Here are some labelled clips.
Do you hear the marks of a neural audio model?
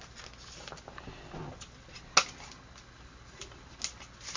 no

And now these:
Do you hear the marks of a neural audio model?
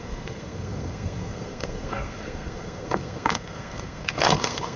yes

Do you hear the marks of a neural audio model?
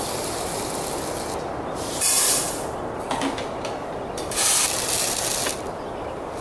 no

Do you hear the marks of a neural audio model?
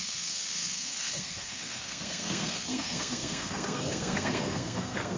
yes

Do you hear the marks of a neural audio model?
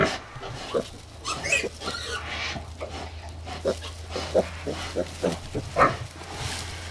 no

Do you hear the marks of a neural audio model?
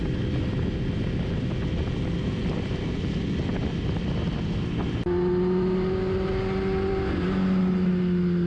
no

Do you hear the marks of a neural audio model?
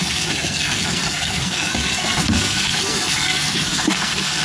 yes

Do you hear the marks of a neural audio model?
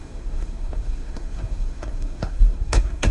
yes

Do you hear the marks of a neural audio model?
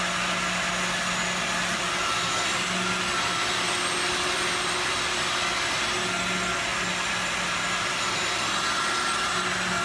no